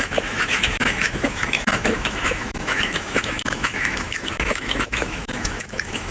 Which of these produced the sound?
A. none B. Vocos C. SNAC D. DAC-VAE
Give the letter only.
D